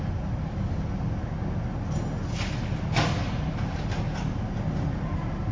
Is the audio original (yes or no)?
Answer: yes